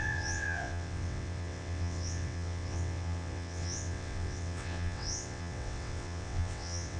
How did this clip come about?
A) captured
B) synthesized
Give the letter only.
B